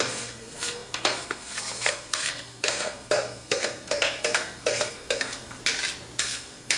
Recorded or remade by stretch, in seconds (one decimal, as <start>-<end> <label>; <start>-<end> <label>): 0.0-5.6 remade; 5.6-6.2 recorded; 6.2-6.8 remade